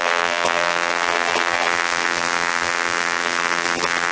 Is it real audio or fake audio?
fake